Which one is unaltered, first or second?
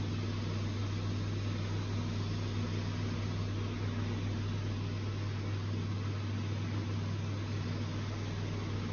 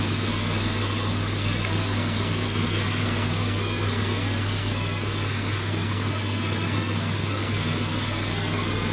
first